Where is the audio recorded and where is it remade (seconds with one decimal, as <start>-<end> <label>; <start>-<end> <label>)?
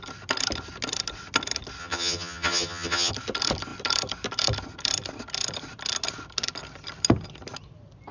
0.0-1.8 recorded; 1.8-3.1 remade; 3.1-8.1 recorded